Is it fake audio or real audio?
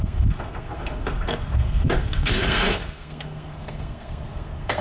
fake